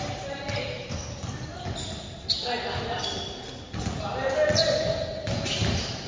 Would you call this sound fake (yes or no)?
no